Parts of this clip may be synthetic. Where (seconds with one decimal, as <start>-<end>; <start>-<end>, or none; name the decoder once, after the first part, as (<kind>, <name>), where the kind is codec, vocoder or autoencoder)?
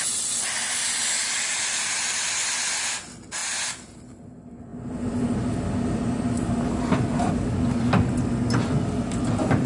none